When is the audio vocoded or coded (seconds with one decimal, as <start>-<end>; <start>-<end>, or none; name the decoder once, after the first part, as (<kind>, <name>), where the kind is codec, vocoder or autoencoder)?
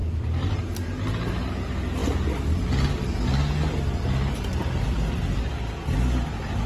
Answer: none